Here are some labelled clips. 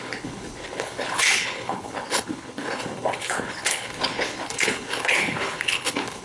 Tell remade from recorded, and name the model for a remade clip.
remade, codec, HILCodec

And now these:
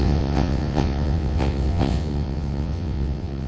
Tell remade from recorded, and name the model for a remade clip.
remade, vocoder, WaveNeXt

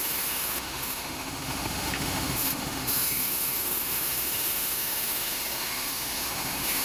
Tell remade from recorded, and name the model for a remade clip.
remade, autoencoder, DAC-VAE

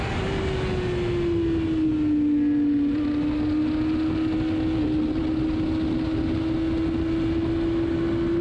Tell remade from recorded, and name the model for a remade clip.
recorded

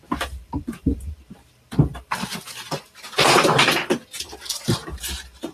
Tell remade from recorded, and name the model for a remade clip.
remade, vocoder, BigVGAN v2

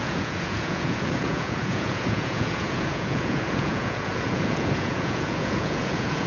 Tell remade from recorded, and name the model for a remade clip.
remade, vocoder, Vocos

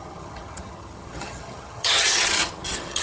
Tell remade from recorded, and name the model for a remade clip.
remade, vocoder, HiFi-GAN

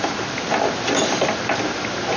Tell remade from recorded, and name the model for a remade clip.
recorded